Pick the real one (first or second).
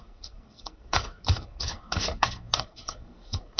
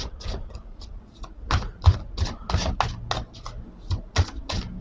second